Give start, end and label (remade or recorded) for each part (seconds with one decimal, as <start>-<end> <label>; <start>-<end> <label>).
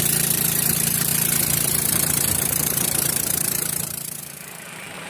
0.0-5.1 remade